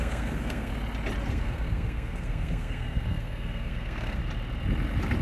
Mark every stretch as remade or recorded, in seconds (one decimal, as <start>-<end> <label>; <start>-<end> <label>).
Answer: 0.0-0.7 remade; 0.7-1.3 recorded; 1.3-4.2 remade; 4.2-5.2 recorded